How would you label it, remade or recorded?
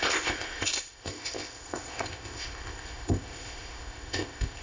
remade